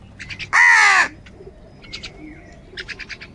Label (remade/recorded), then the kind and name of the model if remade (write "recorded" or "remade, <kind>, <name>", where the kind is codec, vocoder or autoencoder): recorded